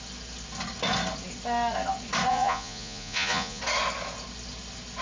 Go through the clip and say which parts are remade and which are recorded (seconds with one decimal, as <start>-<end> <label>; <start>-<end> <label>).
0.0-2.3 recorded; 2.3-3.6 remade; 3.6-5.0 recorded